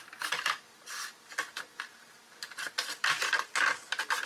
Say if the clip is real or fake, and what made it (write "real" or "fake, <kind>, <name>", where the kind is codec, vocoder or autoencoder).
real